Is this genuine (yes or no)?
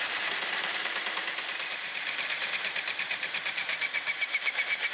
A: no